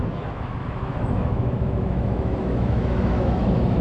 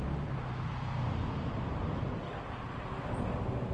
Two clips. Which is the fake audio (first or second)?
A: first